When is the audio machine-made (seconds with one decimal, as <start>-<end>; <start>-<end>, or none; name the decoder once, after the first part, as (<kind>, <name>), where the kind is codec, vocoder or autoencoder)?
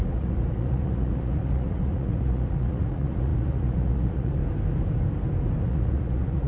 0.0-4.4 (vocoder, Vocos); 5.6-6.5